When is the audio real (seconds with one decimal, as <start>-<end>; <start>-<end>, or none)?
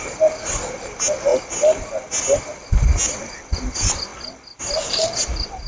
0.0-5.7